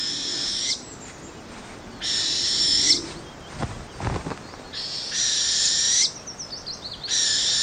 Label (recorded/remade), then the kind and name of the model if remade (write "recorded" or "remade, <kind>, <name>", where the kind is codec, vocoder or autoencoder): recorded